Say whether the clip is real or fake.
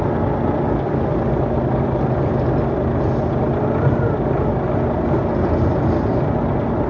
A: real